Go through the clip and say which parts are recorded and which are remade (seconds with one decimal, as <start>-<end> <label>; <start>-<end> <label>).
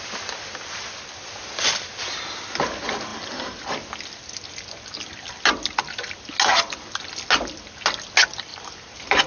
0.0-3.1 recorded; 3.1-3.6 remade; 3.6-8.5 recorded; 8.5-9.3 remade